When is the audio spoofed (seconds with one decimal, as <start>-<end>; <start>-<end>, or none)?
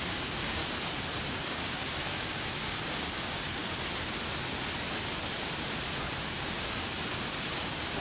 0.0-0.6; 1.2-3.6; 7.6-8.0